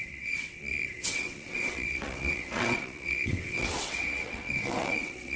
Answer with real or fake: fake